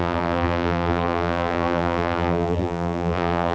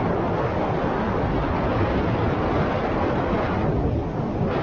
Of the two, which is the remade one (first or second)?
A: first